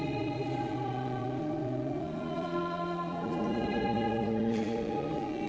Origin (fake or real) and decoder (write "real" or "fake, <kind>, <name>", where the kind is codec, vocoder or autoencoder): fake, vocoder, Vocos